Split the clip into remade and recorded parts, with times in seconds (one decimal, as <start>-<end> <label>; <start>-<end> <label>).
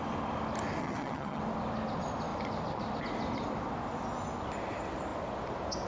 0.0-0.8 recorded; 0.8-1.4 remade; 1.4-5.9 recorded